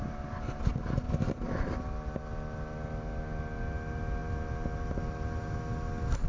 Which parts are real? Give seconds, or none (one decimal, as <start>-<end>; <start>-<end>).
0.0-6.3